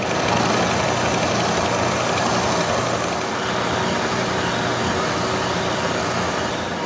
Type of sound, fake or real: real